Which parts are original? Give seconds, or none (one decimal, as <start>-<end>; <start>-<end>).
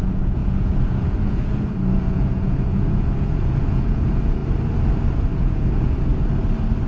4.4-5.3; 6.1-6.9